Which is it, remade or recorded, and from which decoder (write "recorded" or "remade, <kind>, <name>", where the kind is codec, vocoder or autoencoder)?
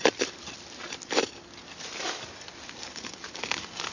recorded